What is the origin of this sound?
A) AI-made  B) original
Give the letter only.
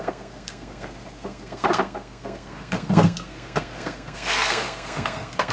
A